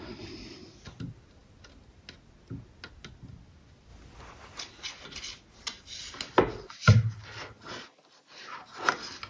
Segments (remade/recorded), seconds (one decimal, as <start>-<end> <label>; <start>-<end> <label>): 0.0-9.3 recorded

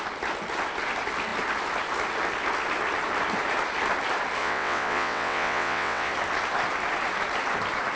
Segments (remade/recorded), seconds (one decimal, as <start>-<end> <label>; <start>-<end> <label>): 0.0-4.4 recorded; 4.4-6.1 remade; 6.1-8.0 recorded

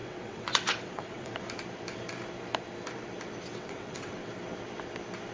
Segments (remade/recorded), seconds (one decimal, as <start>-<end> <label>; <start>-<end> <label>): 0.0-1.3 remade; 1.3-3.5 recorded; 3.5-4.3 remade; 4.3-5.3 recorded